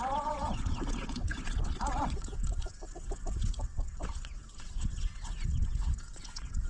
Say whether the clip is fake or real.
fake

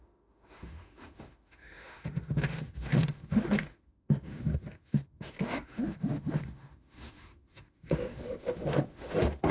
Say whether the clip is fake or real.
fake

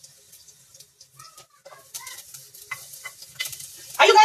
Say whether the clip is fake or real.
real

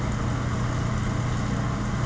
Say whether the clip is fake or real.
real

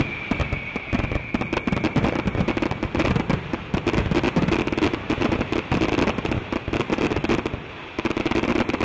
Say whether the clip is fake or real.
real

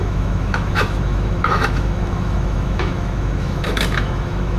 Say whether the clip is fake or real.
fake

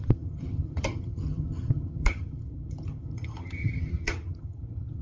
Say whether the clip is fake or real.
fake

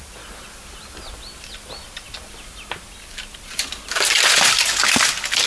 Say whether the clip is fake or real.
real